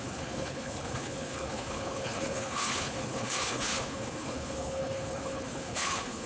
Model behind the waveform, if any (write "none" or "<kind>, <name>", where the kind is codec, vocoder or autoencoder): codec, HILCodec